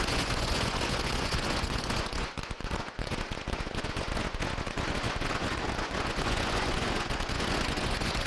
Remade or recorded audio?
remade